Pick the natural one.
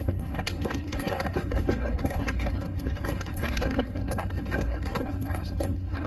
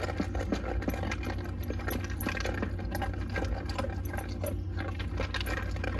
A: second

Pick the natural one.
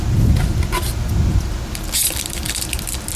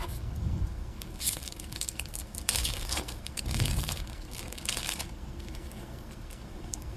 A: first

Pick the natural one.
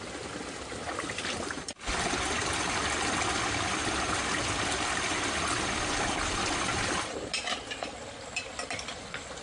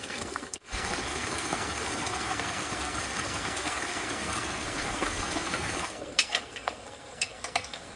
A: first